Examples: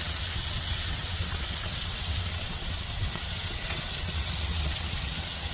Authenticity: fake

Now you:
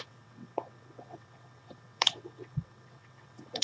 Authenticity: fake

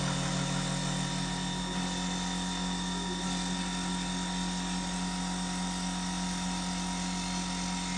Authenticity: real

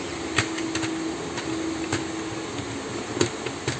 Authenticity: real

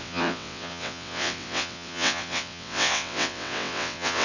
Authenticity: fake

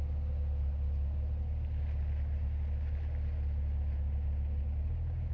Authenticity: real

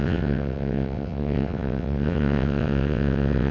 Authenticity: fake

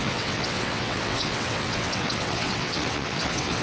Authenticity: fake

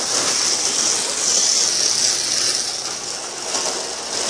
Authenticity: real